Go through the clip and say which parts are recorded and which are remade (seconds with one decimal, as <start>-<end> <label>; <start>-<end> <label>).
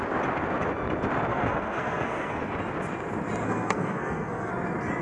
0.0-1.3 recorded; 1.3-2.4 remade; 2.4-3.4 recorded; 3.4-4.5 remade; 4.5-5.0 recorded